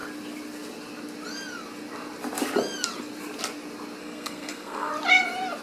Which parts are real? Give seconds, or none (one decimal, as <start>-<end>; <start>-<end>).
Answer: 0.0-4.0; 4.9-5.6